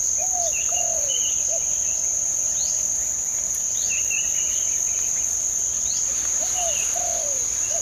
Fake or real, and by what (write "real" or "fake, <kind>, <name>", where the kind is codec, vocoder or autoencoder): real